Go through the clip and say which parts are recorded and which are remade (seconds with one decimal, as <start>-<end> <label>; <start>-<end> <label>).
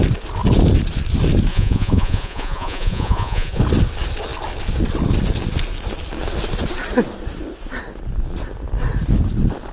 0.0-1.5 recorded; 1.5-3.6 remade; 3.6-9.7 recorded